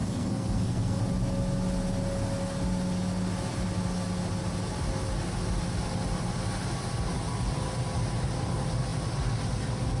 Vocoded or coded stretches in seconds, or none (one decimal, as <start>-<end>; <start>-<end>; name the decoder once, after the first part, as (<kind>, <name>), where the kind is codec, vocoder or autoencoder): 0.0-1.0 (codec, SNAC)